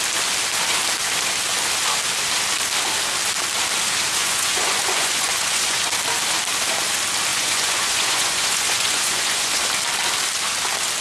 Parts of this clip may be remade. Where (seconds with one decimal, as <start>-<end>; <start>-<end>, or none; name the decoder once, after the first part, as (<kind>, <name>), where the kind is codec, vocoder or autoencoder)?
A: 4.2-5.9 (vocoder, Vocos); 7.3-9.6